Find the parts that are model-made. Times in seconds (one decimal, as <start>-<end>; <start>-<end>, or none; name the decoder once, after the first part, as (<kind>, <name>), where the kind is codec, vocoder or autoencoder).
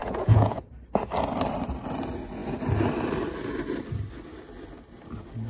0.0-0.6 (vocoder, Vocos)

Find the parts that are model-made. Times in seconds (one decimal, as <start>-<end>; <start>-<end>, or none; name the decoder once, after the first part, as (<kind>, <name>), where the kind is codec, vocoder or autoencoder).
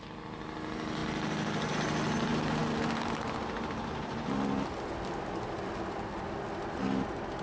none